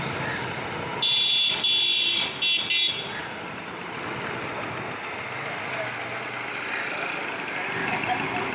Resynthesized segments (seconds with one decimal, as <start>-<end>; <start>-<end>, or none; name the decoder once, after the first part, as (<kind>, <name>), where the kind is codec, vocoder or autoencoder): none